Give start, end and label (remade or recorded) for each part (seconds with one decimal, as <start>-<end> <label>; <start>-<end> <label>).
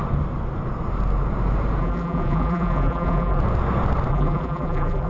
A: 0.0-1.8 recorded; 1.8-3.4 remade; 3.4-4.1 recorded; 4.1-5.1 remade